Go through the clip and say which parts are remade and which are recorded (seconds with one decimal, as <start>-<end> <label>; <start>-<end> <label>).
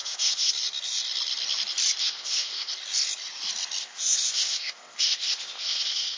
0.0-0.5 remade; 0.5-2.0 recorded; 2.0-2.7 remade; 2.7-3.8 recorded; 3.8-6.2 remade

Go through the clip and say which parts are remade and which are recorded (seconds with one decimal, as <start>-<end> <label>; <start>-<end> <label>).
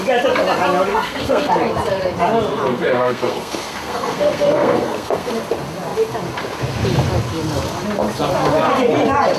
0.0-0.9 recorded; 0.9-1.5 remade; 1.5-2.7 recorded; 2.7-5.3 remade; 5.3-9.4 recorded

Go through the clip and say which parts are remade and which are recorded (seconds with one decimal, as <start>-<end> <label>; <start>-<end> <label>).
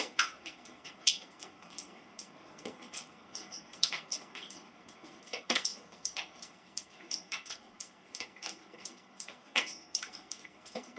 0.0-11.0 remade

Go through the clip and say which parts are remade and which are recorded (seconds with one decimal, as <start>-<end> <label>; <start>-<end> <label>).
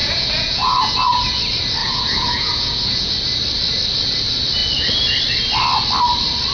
0.0-1.4 remade; 1.4-1.8 recorded; 1.8-3.1 remade; 3.1-6.5 recorded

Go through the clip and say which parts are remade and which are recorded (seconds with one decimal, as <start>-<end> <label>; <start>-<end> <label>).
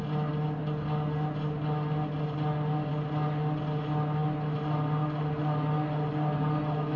0.0-7.0 recorded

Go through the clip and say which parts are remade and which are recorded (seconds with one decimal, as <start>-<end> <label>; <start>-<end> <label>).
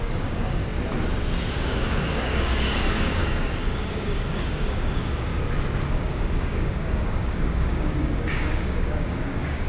0.0-0.6 remade; 0.6-1.5 recorded; 1.5-5.3 remade; 5.3-5.9 recorded; 5.9-9.7 remade